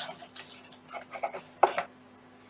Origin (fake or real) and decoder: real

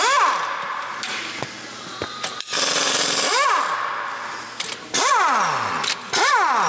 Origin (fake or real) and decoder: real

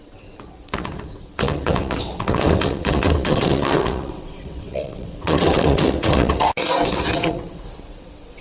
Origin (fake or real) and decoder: fake, vocoder, WaveNeXt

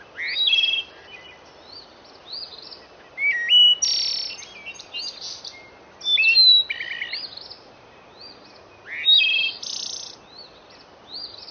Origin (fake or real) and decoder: real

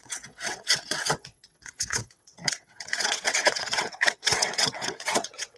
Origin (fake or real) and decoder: fake, vocoder, WaveNeXt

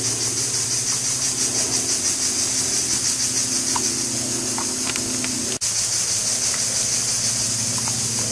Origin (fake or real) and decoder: real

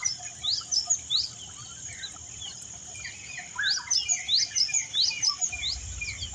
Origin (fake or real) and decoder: real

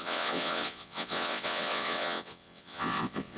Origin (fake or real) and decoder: fake, vocoder, WaveNeXt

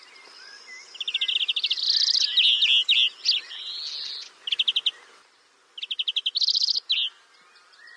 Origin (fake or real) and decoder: real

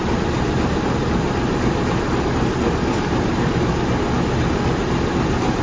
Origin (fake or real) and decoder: real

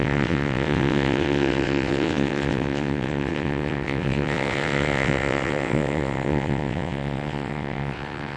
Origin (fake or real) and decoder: fake, vocoder, WaveNeXt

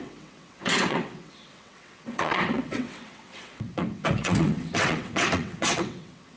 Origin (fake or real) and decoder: fake, vocoder, WaveNeXt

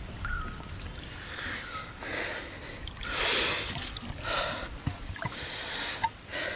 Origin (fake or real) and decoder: real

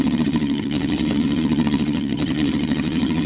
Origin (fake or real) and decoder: fake, vocoder, WaveNeXt